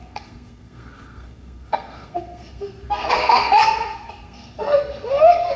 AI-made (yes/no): yes